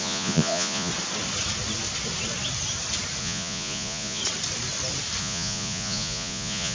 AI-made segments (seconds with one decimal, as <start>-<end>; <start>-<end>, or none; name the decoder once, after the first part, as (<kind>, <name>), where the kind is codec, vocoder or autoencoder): 0.0-0.9 (vocoder, Vocos); 3.2-4.2; 5.2-6.7